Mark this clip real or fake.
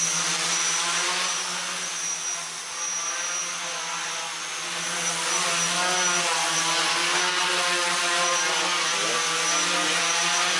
real